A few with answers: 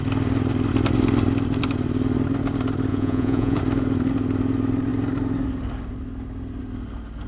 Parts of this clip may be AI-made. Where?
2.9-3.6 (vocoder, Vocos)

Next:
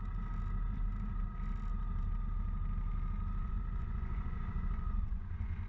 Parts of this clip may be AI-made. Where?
3.4-5.7 (vocoder, Vocos)

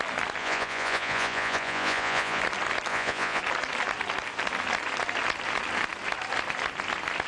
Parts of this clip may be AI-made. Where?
0.4-2.4 (vocoder, Vocos); 2.9-3.4

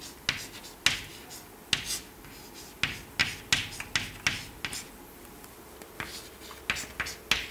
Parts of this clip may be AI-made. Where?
none

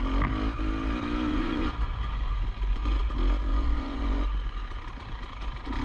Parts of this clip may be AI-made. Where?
1.3-3.1 (vocoder, Vocos); 3.5-4.9

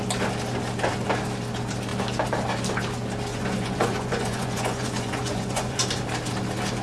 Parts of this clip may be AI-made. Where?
3.3-5.8 (vocoder, Vocos)

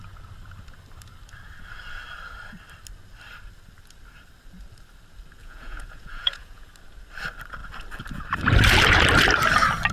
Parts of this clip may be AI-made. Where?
5.4-6.7 (vocoder, Vocos)